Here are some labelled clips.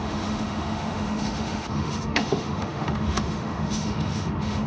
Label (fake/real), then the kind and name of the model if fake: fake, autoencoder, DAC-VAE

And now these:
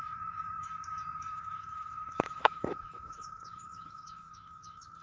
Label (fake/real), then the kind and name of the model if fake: fake, autoencoder, DAC-VAE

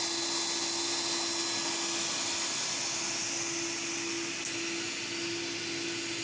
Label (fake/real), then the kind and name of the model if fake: real